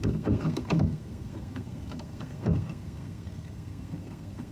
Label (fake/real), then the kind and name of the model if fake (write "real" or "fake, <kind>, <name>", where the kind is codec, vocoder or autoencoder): fake, codec, SNAC